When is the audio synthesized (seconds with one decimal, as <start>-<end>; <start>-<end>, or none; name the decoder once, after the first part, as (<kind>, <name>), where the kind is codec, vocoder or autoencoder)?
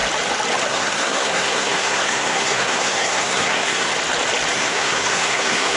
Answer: 0.7-3.9 (codec, SNAC); 4.5-5.8